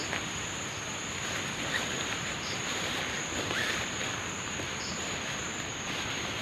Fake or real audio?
real